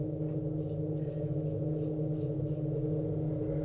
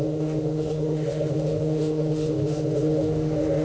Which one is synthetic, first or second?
second